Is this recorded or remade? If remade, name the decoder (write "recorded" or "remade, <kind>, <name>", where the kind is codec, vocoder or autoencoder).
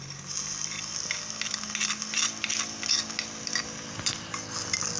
recorded